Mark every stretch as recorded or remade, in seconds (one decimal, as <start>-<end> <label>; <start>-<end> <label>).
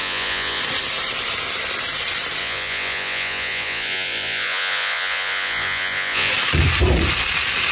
0.0-0.6 remade; 0.6-2.4 recorded; 2.4-6.3 remade; 6.3-7.7 recorded